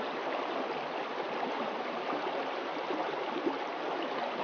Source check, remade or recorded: recorded